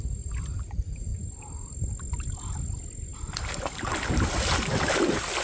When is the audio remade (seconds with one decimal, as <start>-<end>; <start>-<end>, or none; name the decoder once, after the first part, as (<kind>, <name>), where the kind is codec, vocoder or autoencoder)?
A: none